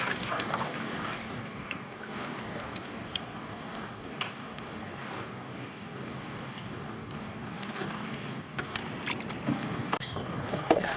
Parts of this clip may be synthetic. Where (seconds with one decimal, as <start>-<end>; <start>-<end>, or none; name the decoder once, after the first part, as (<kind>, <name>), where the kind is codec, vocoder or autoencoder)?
0.0-8.8 (codec, DAC); 9.5-11.0